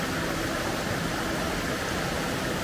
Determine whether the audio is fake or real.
real